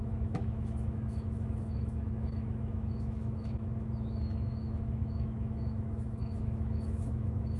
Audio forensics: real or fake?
fake